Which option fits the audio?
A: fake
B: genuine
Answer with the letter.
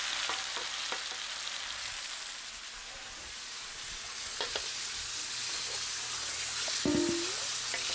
B